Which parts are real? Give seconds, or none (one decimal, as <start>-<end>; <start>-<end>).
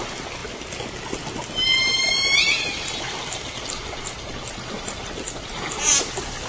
0.0-6.5